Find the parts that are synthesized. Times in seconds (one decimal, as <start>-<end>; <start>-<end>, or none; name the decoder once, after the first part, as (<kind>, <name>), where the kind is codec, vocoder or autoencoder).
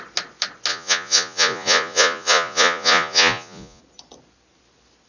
0.7-3.8 (vocoder, Vocos)